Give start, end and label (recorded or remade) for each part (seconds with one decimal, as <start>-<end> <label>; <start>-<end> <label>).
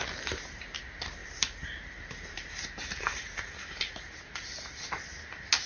0.0-1.2 recorded; 1.2-4.6 remade; 4.6-5.7 recorded